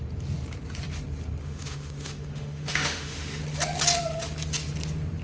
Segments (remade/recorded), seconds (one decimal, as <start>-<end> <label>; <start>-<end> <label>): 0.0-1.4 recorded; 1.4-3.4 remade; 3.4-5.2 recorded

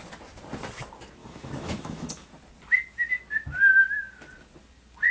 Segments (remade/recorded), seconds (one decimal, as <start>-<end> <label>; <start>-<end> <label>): 0.0-1.2 recorded; 1.2-2.3 remade; 2.3-5.1 recorded

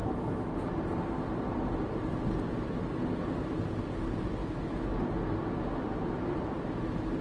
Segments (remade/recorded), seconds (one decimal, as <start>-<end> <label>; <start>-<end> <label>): 0.0-0.5 remade; 0.5-4.4 recorded; 4.4-5.0 remade; 5.0-7.2 recorded

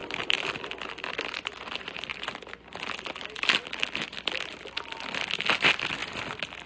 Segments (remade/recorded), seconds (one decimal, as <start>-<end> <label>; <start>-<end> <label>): 0.0-6.7 recorded